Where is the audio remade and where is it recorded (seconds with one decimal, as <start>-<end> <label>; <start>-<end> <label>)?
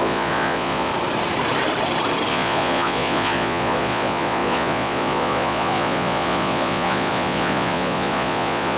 0.0-0.9 remade; 0.9-2.3 recorded; 2.3-8.8 remade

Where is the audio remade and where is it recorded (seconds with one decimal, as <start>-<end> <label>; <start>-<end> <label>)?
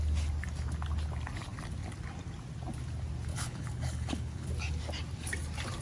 0.0-3.3 recorded; 3.3-4.5 remade; 4.5-5.8 recorded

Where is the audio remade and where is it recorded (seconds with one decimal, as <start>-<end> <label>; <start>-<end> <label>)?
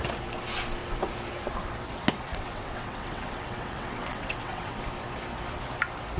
0.0-2.3 recorded; 2.3-4.8 remade; 4.8-6.2 recorded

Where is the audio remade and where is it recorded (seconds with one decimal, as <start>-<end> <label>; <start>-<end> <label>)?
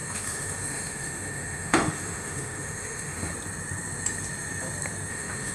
0.0-3.3 remade; 3.3-5.1 recorded; 5.1-5.5 remade